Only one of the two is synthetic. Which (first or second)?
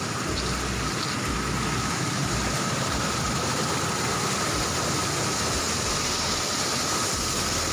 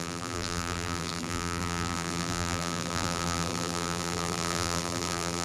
second